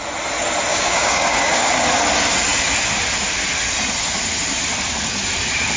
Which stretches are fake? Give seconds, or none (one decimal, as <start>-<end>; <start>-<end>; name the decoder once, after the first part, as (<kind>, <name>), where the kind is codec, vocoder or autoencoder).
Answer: 0.7-1.7 (codec, DAC)